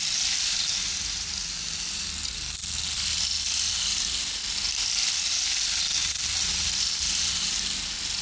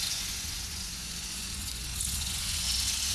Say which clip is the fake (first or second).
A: second